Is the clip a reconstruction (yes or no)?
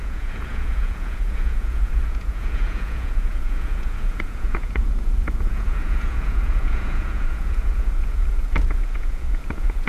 yes